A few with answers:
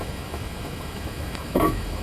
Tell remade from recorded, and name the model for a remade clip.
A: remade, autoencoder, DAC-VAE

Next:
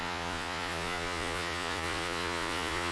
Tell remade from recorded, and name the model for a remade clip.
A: remade, vocoder, Vocos